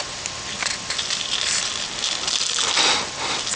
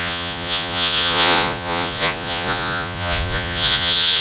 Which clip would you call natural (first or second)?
first